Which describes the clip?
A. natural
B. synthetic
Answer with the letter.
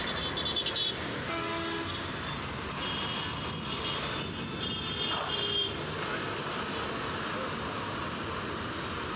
A